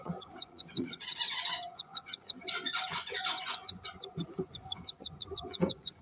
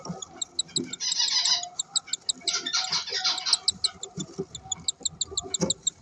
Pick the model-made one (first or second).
first